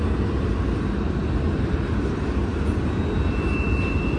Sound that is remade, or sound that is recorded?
recorded